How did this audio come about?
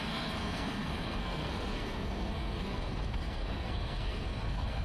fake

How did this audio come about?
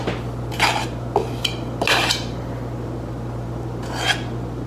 real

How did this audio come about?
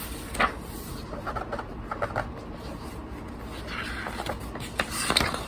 real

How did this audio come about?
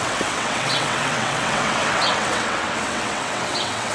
fake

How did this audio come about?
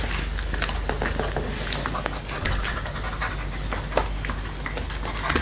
real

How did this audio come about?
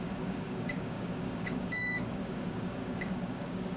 fake